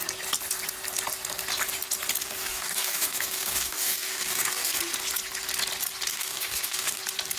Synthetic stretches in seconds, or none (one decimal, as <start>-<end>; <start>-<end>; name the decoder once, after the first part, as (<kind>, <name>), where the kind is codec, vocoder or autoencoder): 2.2-4.8 (codec, DAC); 6.1-7.0